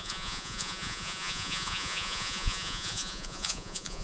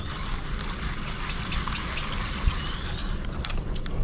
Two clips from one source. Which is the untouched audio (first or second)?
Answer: second